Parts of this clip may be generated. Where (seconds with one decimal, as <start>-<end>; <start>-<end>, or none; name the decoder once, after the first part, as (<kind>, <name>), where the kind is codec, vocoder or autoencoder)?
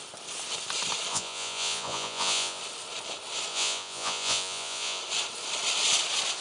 1.1-2.6 (vocoder, Vocos); 3.5-5.0